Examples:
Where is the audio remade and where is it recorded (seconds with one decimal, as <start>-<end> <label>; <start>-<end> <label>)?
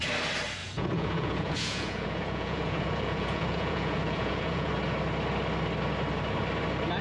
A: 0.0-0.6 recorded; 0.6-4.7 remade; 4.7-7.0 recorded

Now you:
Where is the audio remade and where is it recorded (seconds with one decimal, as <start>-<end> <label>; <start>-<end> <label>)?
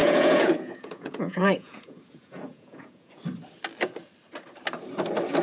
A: 0.0-3.2 remade; 3.2-5.4 recorded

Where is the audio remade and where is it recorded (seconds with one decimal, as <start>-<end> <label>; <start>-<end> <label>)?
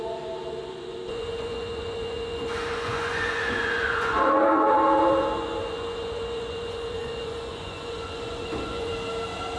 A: 0.0-8.9 remade; 8.9-9.6 recorded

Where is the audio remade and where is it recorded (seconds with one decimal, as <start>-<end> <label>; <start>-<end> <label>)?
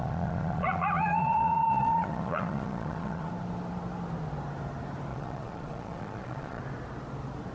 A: 0.0-3.3 remade; 3.3-5.1 recorded; 5.1-6.6 remade; 6.6-7.5 recorded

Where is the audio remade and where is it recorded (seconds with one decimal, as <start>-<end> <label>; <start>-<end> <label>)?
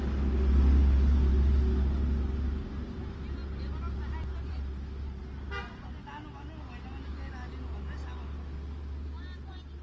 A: 0.0-9.8 recorded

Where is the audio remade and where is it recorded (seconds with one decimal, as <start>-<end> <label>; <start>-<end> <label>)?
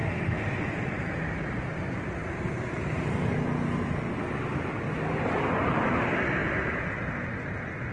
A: 0.0-6.4 recorded; 6.4-6.9 remade; 6.9-7.9 recorded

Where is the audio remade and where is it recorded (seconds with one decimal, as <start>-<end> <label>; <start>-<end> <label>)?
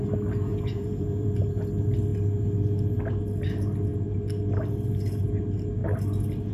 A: 0.0-0.5 recorded; 0.5-1.4 remade; 1.4-6.5 recorded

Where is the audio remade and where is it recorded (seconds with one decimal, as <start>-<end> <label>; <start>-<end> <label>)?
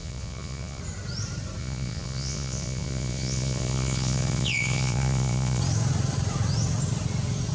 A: 0.0-0.8 remade; 0.8-1.6 recorded; 1.6-5.6 remade; 5.6-7.5 recorded